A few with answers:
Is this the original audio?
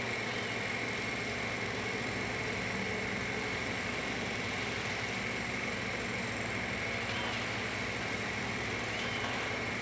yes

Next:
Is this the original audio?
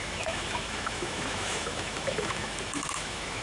no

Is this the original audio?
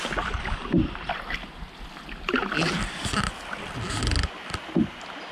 yes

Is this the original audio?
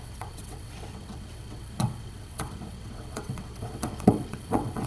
no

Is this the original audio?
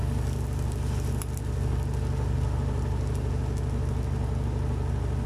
yes